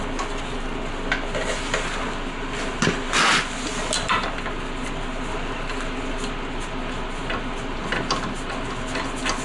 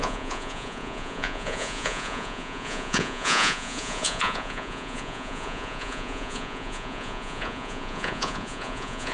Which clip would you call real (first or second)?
first